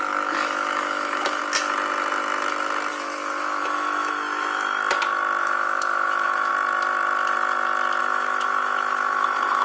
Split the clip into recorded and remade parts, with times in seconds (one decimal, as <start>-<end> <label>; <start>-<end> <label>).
0.0-1.4 remade; 1.4-2.9 recorded; 2.9-4.8 remade; 4.8-5.4 recorded; 5.4-6.5 remade; 6.5-8.0 recorded; 8.0-9.6 remade